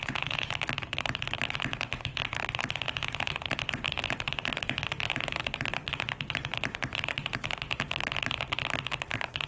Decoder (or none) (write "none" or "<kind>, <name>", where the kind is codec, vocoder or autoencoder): none